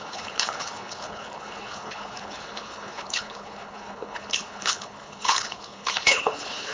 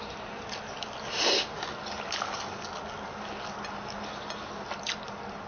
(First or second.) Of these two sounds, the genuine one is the second